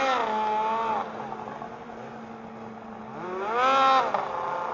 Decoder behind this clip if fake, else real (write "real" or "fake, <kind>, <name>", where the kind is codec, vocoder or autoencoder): real